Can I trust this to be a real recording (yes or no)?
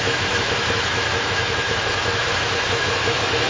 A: no